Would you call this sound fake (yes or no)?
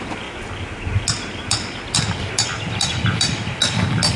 no